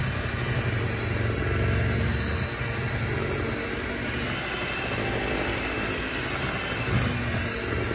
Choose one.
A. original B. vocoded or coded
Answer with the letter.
A